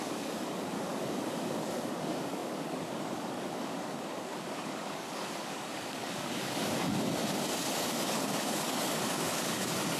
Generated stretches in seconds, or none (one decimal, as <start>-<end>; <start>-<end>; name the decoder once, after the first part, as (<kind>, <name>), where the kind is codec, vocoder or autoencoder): 0.0-10.0 (codec, DAC)